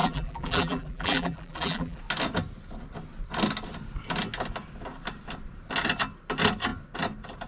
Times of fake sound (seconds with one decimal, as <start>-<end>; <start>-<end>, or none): 0.0-2.0